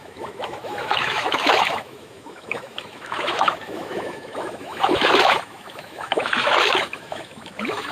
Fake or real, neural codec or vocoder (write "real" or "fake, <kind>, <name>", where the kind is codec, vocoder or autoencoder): fake, autoencoder, DAC-VAE